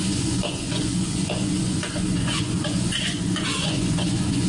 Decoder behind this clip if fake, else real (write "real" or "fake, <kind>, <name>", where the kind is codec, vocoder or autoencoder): fake, vocoder, Vocos